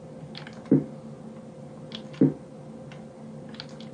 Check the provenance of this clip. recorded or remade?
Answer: recorded